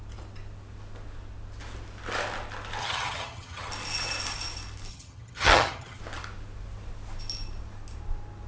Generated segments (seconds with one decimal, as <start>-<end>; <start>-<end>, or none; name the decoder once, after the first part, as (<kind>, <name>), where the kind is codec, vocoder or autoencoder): 2.8-3.7 (vocoder, HiFi-GAN); 4.9-6.0